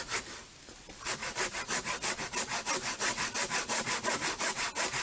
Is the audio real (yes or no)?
yes